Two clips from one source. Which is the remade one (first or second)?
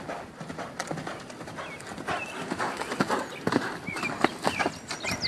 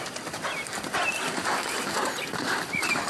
second